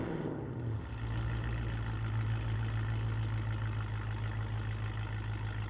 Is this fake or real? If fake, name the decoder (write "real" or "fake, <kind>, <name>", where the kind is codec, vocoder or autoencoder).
real